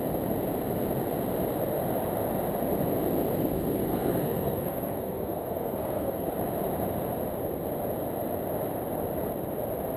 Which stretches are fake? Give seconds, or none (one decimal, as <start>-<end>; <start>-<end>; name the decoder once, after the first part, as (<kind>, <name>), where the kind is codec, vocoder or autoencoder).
3.5-6.3 (codec, SNAC)